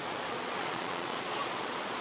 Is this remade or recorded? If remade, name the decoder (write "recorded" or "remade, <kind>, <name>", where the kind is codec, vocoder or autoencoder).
remade, vocoder, Vocos